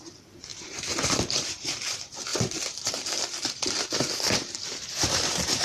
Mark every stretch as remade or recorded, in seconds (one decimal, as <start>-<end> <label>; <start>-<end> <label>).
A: 0.0-5.6 remade

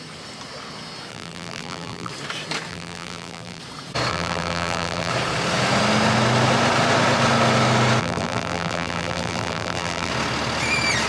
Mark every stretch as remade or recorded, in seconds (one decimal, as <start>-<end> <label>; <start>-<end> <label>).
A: 0.0-1.1 recorded; 1.1-2.1 remade; 2.1-2.7 recorded; 2.7-3.6 remade; 3.6-4.1 recorded; 4.1-5.1 remade; 5.1-8.0 recorded; 8.0-10.1 remade; 10.1-11.1 recorded

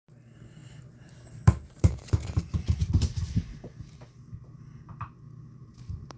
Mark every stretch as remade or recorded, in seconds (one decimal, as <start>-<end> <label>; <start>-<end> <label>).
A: 0.0-2.8 remade; 2.8-5.5 recorded; 5.5-6.2 remade

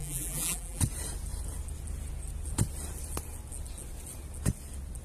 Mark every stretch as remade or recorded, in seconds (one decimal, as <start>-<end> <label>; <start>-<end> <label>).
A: 0.0-0.8 remade; 0.8-5.0 recorded

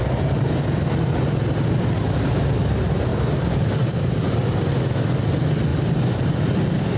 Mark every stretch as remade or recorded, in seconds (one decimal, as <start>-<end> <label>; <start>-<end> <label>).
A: 0.0-3.1 recorded; 3.1-4.6 remade; 4.6-5.7 recorded; 5.7-7.0 remade

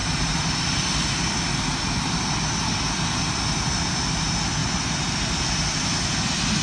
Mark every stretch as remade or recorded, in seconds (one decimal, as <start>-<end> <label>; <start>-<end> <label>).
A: 0.0-6.6 recorded

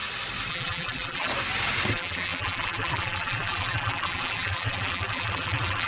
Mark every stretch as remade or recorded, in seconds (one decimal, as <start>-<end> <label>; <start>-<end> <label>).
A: 0.0-0.5 recorded; 0.5-1.3 remade; 1.3-1.9 recorded; 1.9-5.9 remade